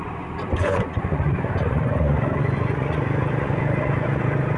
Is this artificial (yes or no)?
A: yes